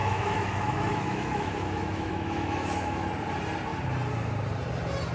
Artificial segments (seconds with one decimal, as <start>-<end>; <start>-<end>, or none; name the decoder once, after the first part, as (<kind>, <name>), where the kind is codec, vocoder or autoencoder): 0.0-3.1 (autoencoder, DAC-VAE)